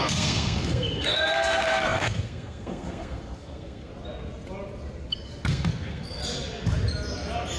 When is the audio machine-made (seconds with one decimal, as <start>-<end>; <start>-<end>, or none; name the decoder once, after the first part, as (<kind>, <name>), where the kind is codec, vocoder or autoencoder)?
0.0-3.9 (codec, SNAC); 5.5-6.2